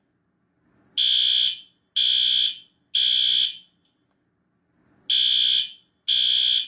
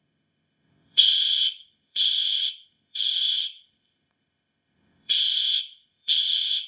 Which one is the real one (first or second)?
first